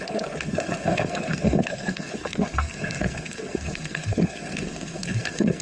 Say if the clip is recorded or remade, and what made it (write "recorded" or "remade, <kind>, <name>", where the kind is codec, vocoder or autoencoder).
remade, codec, SNAC